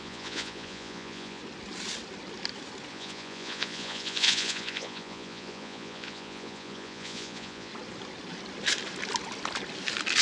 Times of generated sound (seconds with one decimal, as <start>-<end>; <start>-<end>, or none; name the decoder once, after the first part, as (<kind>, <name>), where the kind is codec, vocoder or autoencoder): 0.0-1.4 (vocoder, Vocos); 2.9-7.7